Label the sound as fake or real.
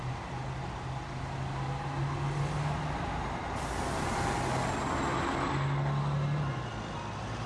real